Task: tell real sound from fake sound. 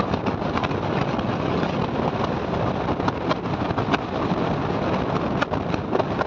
real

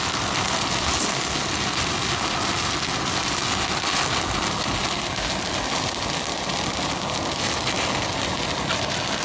real